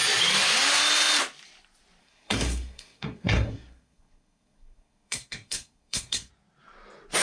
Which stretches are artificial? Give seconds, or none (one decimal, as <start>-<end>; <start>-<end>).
2.0-6.3